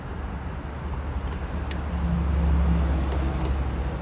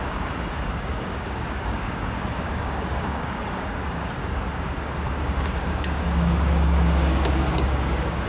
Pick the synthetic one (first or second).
second